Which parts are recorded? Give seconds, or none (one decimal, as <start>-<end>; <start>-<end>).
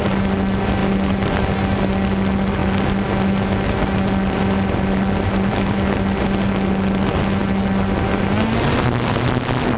0.0-9.8